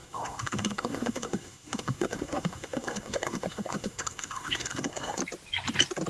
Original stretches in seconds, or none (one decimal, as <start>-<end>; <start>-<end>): 5.2-6.1